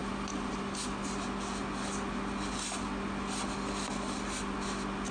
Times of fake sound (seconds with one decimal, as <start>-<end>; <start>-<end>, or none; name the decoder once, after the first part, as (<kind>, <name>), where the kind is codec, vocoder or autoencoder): none